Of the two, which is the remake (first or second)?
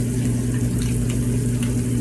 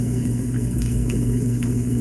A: second